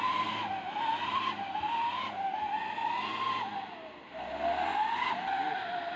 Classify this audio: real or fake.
real